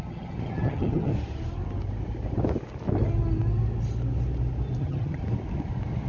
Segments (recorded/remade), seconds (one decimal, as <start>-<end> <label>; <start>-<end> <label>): 0.0-1.1 remade; 1.1-4.8 recorded; 4.8-5.2 remade; 5.2-6.1 recorded